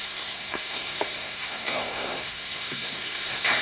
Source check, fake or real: fake